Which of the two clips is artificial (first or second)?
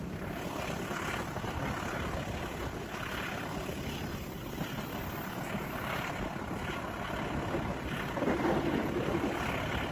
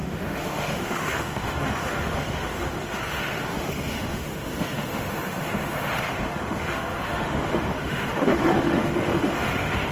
second